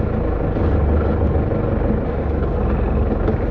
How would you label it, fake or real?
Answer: real